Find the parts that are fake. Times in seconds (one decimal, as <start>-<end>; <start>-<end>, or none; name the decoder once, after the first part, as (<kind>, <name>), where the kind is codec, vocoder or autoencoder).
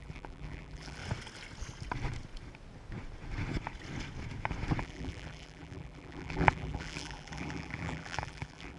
0.0-1.0 (vocoder, BigVGAN v2); 4.8-8.8